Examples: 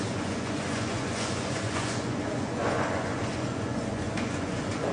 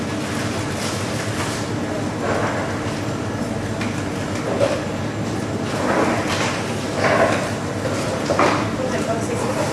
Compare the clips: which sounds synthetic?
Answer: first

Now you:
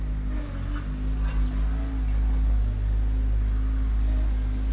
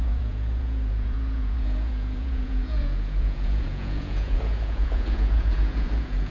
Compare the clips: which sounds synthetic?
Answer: second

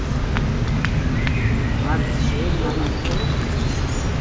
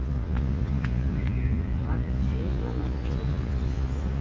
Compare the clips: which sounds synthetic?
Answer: second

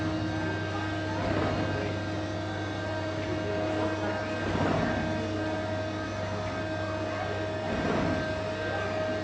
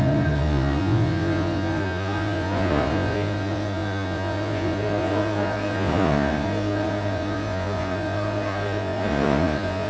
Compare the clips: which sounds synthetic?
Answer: second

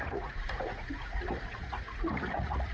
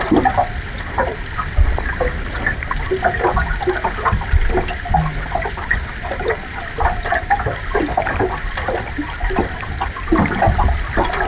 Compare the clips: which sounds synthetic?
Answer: first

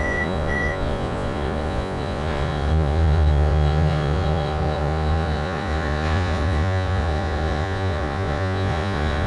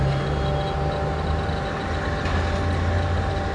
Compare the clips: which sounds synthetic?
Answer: first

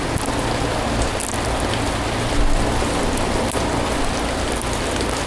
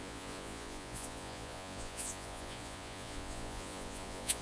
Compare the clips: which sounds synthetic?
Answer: second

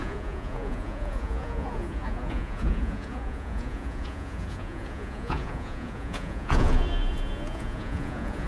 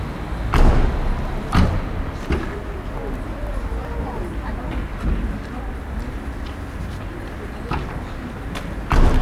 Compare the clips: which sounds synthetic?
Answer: first